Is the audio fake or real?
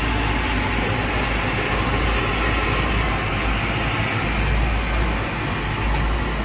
real